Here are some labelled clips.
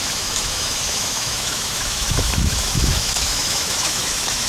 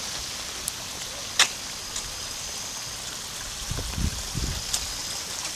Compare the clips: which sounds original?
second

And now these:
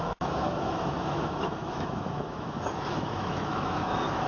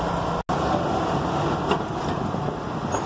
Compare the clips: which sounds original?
second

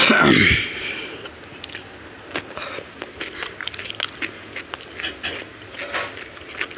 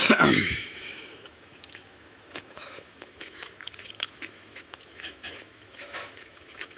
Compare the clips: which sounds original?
first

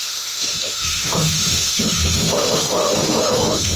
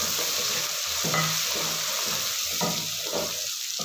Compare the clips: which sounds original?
second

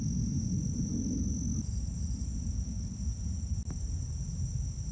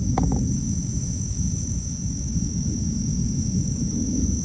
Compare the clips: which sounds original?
first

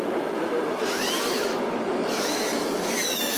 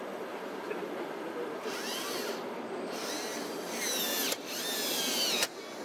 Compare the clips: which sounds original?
second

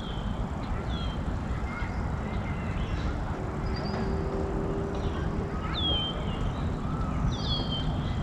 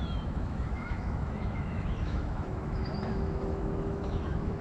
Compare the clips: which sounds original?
first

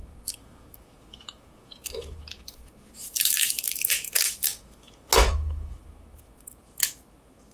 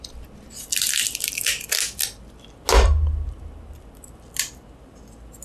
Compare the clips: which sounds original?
second